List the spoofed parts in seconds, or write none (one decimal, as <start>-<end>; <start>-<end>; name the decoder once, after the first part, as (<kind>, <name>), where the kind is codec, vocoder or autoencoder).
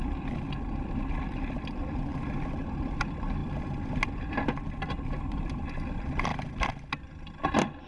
none